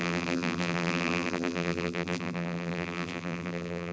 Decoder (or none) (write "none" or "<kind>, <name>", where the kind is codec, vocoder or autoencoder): vocoder, BigVGAN v2